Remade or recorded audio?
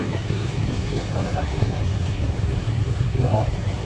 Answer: remade